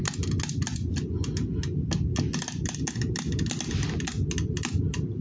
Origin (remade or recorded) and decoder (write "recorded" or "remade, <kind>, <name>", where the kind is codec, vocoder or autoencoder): recorded